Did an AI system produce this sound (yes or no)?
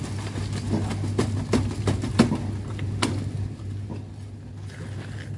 no